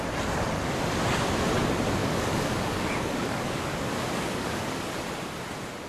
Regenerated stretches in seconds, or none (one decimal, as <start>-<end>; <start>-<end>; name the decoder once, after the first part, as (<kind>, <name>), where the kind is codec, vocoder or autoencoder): 2.0-4.6 (codec, DAC)

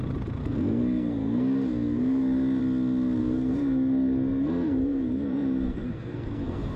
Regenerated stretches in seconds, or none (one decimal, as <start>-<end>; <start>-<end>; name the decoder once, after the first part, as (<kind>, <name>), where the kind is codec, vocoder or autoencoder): 0.4-2.6 (codec, SNAC); 3.2-6.8

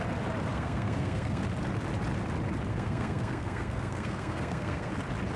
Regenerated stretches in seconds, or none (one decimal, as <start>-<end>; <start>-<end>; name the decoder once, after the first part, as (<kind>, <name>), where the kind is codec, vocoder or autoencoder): 0.5-1.4 (codec, SNAC); 2.7-4.9

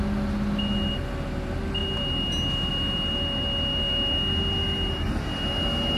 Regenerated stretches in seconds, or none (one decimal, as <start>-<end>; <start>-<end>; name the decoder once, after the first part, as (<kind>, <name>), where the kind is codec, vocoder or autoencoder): none

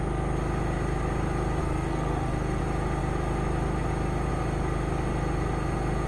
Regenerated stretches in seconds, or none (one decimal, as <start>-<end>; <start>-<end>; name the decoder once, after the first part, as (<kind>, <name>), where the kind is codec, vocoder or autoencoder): 1.6-2.6 (codec, SNAC)

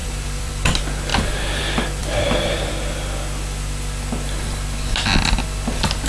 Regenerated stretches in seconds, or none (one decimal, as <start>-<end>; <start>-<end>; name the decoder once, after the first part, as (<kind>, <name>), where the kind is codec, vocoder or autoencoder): 0.0-0.5 (vocoder, BigVGAN v2); 2.0-2.7

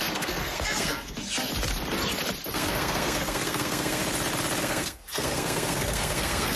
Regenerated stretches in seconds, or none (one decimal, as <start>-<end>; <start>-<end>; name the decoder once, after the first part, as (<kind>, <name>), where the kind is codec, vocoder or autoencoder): 0.0-1.5 (codec, SNAC); 2.5-4.0; 4.6-6.6